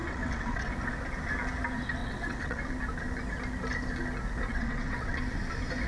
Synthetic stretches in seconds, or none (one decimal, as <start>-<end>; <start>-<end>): 0.0-0.7; 2.0-2.6; 4.5-5.2